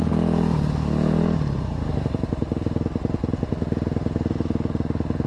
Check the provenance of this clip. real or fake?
real